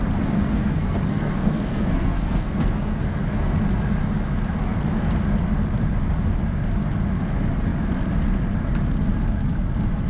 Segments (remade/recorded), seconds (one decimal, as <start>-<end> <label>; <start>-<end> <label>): 0.0-0.4 recorded; 0.4-3.1 remade; 3.1-10.1 recorded